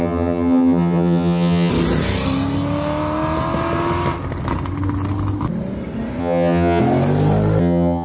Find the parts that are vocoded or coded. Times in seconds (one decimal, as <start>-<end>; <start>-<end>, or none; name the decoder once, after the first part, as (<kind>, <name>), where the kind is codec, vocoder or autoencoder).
0.0-1.7 (vocoder, HiFi-GAN); 6.2-6.8; 7.6-8.0